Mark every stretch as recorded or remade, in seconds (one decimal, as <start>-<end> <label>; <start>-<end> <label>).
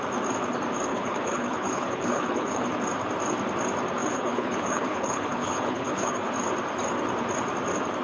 0.0-0.9 recorded; 0.9-2.7 remade; 2.7-4.0 recorded; 4.0-6.3 remade; 6.3-8.0 recorded